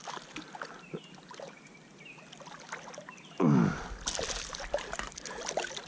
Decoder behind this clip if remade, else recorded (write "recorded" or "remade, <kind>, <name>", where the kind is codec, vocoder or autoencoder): recorded